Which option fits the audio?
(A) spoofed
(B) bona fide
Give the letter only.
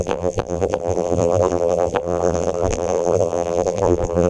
A